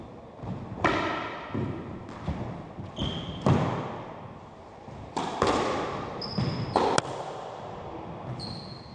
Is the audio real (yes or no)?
yes